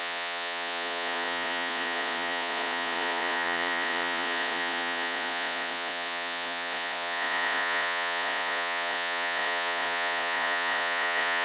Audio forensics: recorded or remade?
remade